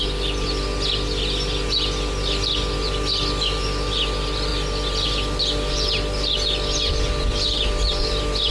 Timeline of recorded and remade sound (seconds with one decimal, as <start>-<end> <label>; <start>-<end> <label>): 0.0-8.5 recorded